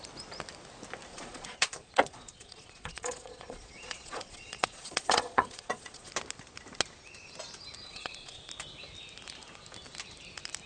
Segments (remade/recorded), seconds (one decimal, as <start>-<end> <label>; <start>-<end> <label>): 0.0-1.1 recorded; 1.1-6.1 remade; 6.1-7.9 recorded; 7.9-8.5 remade; 8.5-10.7 recorded